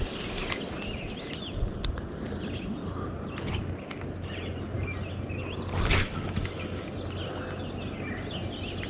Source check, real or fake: real